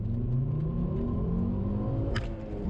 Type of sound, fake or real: real